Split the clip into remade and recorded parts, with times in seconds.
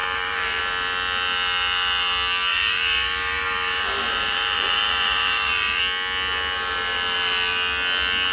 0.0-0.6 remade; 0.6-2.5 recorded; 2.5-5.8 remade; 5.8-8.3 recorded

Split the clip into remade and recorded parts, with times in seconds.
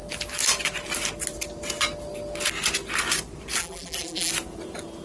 0.0-3.6 recorded; 3.6-4.3 remade; 4.3-5.0 recorded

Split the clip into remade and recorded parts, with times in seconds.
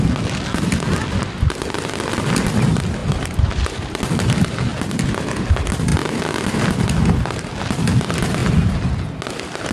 0.0-3.0 recorded; 3.0-4.0 remade; 4.0-9.7 recorded